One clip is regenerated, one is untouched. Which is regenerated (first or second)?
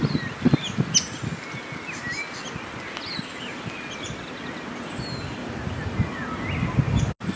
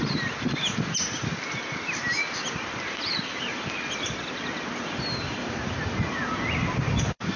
second